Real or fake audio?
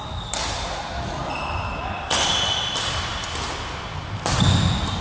real